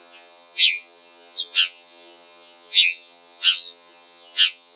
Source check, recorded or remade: remade